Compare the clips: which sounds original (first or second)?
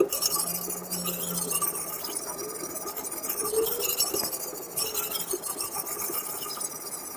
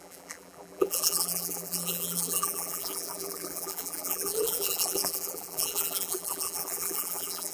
first